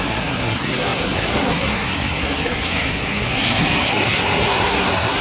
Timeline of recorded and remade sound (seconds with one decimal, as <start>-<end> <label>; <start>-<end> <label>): 0.0-5.2 remade